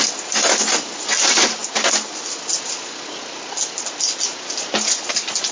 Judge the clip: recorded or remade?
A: recorded